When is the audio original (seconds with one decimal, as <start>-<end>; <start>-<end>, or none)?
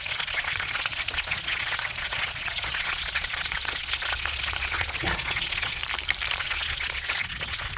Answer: 5.8-6.4